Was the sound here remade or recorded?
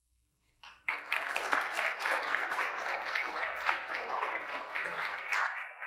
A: remade